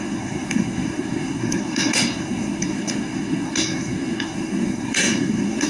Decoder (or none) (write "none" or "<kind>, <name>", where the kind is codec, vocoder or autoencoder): codec, SNAC